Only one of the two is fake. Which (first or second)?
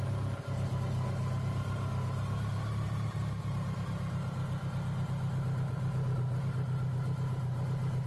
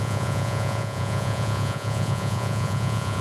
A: second